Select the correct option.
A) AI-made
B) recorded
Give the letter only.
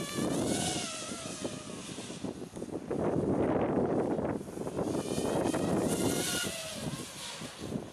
B